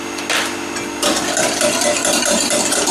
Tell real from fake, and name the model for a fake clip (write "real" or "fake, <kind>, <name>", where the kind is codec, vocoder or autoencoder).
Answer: real